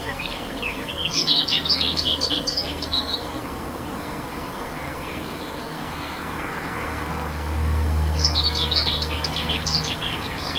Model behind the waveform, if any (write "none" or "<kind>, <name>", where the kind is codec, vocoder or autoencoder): codec, SNAC